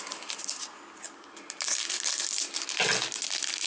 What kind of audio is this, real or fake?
real